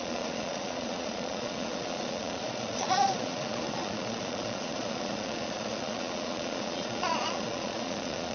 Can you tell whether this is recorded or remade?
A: remade